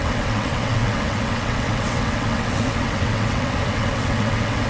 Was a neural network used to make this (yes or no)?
yes